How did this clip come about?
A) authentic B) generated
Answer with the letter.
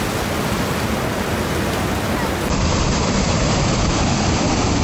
A